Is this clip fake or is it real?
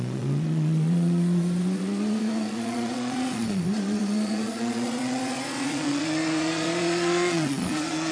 fake